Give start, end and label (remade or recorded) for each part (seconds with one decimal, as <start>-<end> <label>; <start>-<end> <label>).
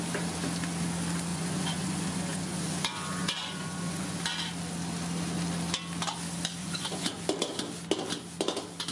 0.0-1.3 recorded; 1.3-4.2 remade; 4.2-6.6 recorded; 6.6-7.2 remade; 7.2-8.9 recorded